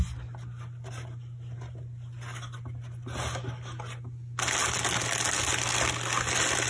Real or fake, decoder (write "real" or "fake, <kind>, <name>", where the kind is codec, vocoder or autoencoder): real